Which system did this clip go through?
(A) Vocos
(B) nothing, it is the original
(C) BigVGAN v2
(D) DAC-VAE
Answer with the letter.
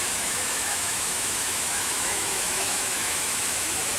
D